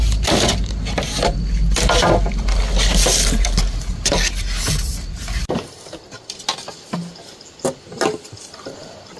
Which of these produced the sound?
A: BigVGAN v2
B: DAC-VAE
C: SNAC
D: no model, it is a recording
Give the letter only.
D